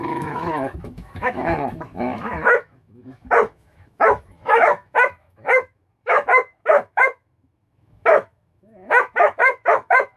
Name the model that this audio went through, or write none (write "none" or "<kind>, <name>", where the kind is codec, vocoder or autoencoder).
autoencoder, DAC-VAE